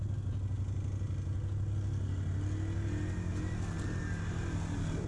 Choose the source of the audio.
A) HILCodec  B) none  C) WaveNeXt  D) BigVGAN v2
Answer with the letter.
B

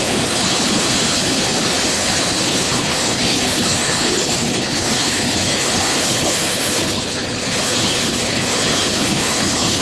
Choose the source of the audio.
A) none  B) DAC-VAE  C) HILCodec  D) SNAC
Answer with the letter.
C